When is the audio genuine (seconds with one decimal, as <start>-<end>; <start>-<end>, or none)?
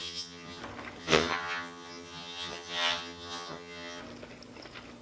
0.6-1.0; 4.0-5.0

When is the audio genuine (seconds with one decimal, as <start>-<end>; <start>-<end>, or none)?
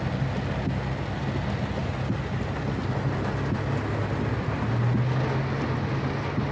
0.0-6.5